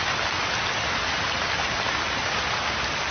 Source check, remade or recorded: recorded